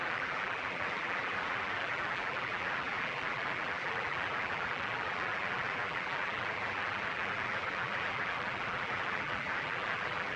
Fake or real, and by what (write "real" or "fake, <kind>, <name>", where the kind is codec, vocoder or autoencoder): fake, vocoder, BigVGAN v2